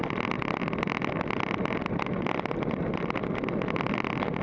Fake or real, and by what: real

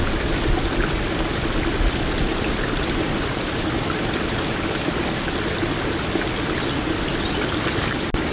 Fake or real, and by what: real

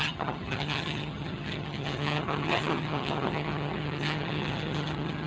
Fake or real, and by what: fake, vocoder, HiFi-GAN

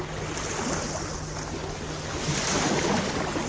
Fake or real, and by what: real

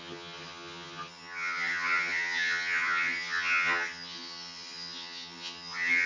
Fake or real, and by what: fake, vocoder, HiFi-GAN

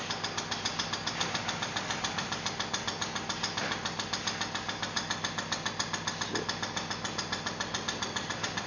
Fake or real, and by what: real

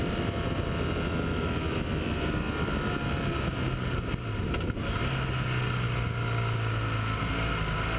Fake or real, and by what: real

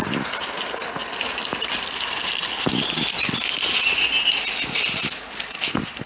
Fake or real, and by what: real